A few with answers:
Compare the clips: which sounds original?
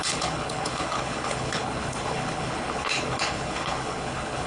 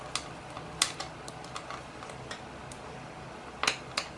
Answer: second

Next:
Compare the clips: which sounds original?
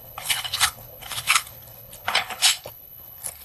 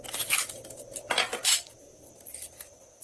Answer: second